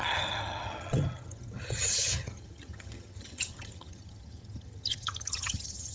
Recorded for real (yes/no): no